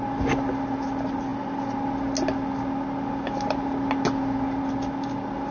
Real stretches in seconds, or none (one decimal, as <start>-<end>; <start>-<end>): 0.0-5.5

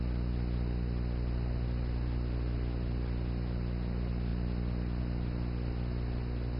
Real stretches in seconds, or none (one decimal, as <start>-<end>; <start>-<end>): 0.0-6.6